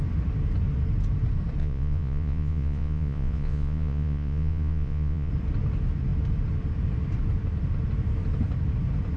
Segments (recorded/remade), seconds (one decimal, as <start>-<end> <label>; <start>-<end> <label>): 0.0-1.6 recorded; 1.6-5.3 remade; 5.3-9.2 recorded